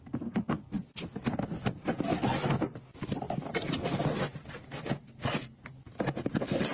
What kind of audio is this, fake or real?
real